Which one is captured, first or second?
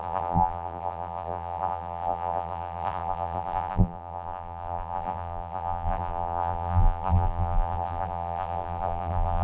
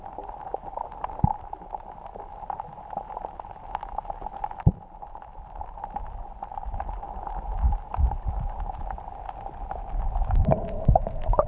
second